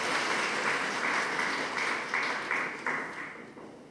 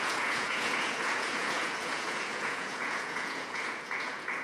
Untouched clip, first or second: first